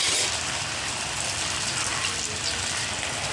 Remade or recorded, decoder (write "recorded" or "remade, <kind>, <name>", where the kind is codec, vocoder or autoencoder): recorded